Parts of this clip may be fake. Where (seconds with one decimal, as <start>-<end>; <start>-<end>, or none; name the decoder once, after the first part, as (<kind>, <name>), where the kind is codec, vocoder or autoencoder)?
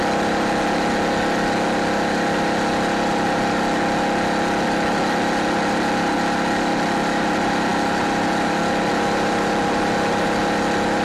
none